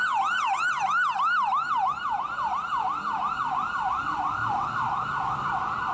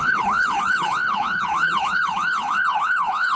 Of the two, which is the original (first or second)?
first